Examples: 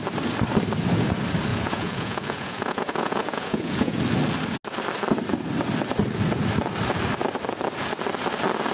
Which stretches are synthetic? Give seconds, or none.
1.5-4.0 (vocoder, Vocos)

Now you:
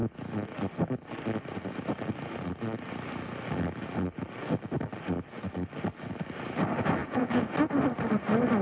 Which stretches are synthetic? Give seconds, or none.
7.0-7.5 (vocoder, Vocos)

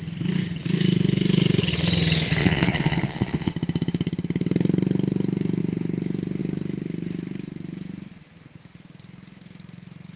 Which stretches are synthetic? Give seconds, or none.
2.4-3.5 (vocoder, Vocos)

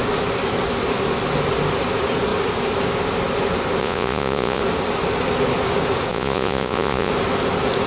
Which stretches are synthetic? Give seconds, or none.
3.8-4.6 (vocoder, Vocos); 6.1-7.1

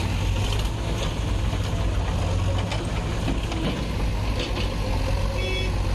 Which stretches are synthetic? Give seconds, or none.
none

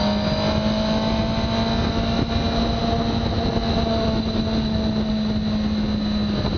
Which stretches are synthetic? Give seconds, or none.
none